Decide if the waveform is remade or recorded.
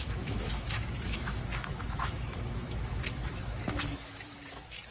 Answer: remade